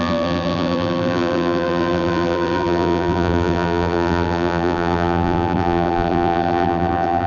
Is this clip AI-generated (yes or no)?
yes